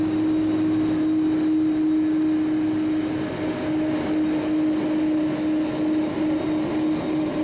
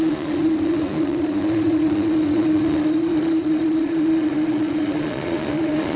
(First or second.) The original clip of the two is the first